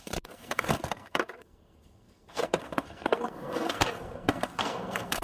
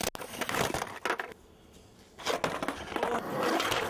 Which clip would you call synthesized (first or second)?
first